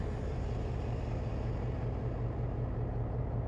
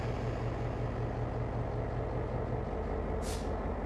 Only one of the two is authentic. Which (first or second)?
second